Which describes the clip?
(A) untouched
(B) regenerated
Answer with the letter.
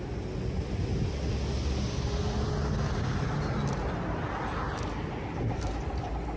A